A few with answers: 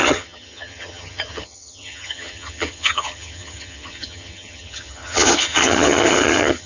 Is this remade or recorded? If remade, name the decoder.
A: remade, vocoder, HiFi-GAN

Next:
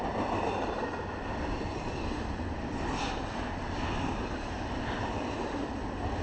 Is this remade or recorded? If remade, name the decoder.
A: recorded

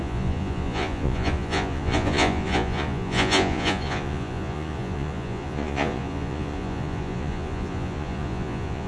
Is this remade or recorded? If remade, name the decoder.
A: remade, vocoder, Vocos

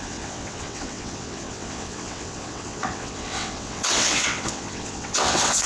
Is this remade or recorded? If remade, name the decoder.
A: remade, vocoder, WaveNeXt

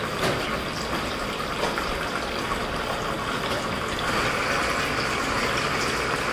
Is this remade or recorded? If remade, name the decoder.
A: remade, vocoder, BigVGAN v2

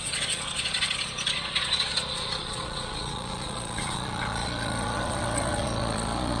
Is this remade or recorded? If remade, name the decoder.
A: remade, vocoder, Vocos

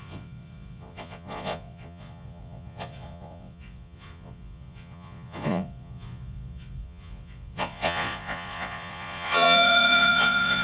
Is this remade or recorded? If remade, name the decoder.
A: remade, vocoder, Vocos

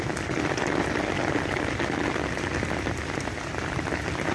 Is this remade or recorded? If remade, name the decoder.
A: recorded